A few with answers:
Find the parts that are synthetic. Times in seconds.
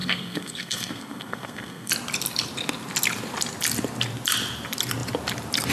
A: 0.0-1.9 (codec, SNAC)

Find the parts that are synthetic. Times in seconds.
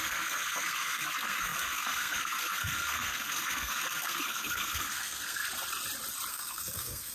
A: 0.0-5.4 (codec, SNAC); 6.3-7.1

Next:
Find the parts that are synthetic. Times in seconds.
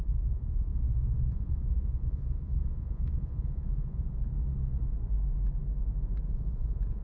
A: 0.0-4.3 (vocoder, Vocos); 6.2-7.0